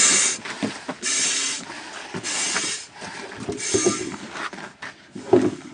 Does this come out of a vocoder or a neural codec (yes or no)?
no